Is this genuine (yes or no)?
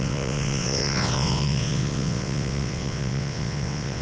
no